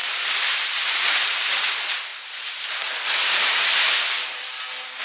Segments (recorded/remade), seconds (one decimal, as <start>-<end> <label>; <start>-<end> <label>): 0.0-1.6 remade; 1.6-3.2 recorded; 3.2-4.6 remade; 4.6-5.0 recorded